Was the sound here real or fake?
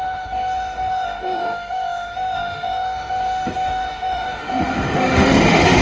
fake